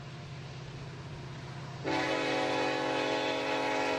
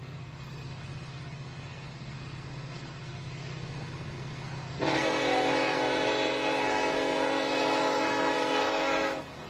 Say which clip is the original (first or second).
first